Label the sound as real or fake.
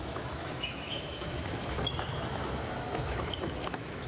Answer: fake